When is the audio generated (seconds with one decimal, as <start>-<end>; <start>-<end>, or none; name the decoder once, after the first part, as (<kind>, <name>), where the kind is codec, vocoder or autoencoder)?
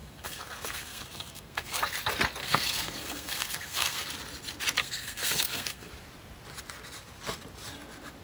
0.0-1.8 (codec, SNAC); 2.4-4.1; 4.8-5.9